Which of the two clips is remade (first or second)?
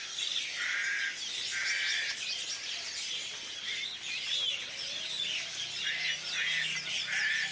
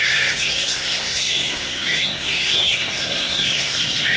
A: second